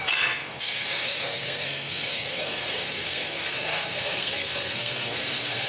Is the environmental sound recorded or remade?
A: remade